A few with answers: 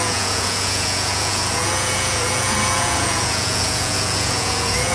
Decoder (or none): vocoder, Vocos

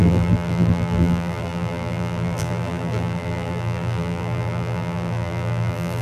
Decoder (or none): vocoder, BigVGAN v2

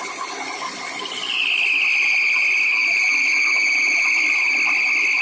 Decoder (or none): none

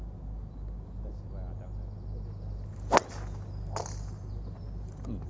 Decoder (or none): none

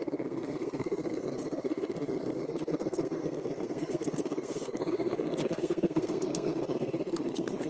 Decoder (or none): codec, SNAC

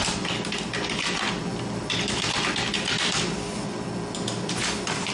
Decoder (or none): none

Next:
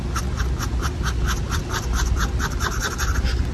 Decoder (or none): none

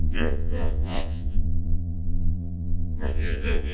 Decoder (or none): vocoder, Vocos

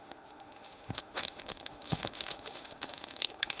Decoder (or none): autoencoder, DAC-VAE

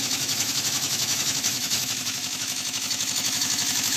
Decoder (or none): autoencoder, DAC-VAE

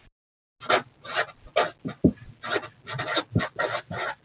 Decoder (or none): none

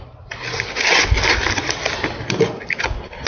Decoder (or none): none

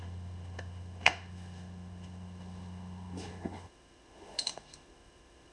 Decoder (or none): autoencoder, DAC-VAE